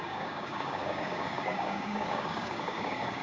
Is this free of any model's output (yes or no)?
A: no